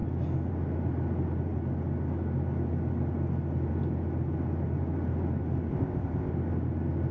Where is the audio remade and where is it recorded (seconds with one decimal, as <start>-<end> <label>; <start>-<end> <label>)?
0.0-5.7 recorded; 5.7-6.3 remade; 6.3-7.1 recorded